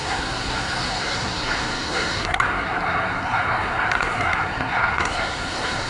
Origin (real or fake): fake